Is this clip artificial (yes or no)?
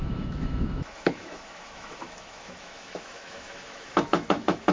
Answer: yes